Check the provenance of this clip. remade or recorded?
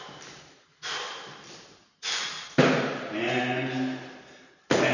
recorded